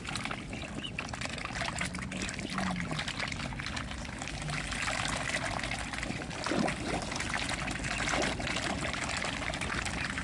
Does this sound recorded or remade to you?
recorded